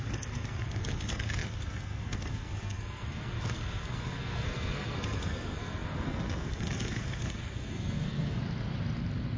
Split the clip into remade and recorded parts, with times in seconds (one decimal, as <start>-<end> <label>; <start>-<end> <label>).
0.0-8.4 remade; 8.4-9.4 recorded